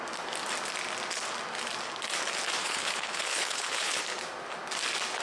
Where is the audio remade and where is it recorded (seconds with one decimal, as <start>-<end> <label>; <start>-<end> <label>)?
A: 0.0-2.6 recorded; 2.6-4.0 remade; 4.0-5.2 recorded